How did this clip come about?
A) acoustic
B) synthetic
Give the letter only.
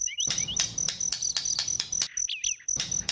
A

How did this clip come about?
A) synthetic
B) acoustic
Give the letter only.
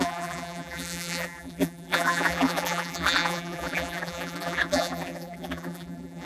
A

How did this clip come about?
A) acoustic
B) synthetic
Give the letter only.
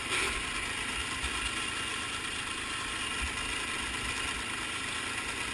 A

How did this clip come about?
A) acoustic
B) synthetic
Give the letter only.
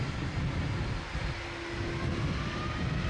A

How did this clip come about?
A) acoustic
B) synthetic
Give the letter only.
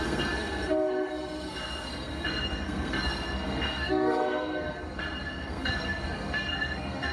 B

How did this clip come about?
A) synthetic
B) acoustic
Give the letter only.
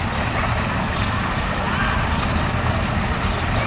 B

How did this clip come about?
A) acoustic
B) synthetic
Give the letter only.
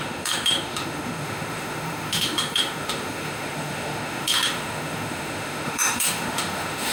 B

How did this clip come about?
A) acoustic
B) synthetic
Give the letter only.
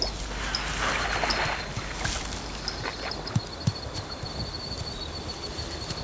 A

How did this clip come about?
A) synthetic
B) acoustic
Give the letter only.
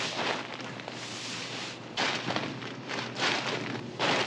B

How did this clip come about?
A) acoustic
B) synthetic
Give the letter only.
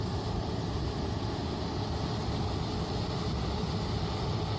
A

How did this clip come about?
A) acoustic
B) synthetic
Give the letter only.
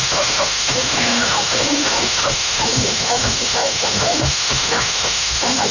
B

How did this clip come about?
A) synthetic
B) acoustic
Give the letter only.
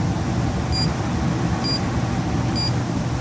B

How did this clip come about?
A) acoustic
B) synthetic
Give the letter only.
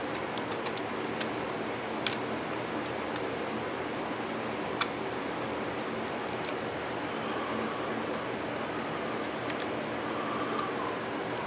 A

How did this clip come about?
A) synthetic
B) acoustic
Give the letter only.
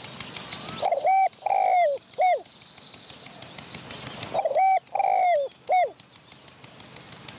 B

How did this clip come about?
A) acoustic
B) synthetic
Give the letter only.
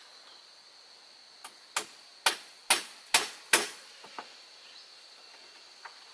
A